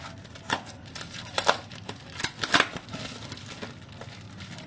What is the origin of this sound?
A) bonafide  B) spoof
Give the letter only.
A